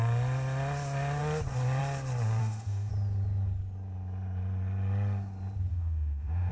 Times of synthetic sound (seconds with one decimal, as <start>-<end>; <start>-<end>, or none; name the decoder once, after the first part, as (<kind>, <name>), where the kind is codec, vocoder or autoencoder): 2.4-2.9 (autoencoder, DAC-VAE); 5.7-6.5